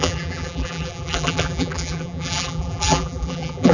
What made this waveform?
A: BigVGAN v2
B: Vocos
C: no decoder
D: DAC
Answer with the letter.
A